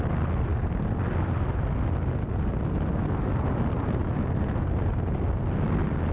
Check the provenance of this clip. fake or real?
real